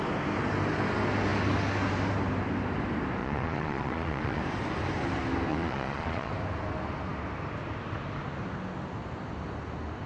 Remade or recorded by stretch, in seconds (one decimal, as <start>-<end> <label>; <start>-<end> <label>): 0.0-3.2 recorded; 3.2-4.4 remade; 4.4-5.5 recorded; 5.5-6.3 remade; 6.3-10.1 recorded